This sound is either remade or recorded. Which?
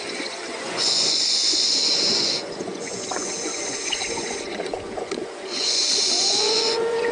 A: remade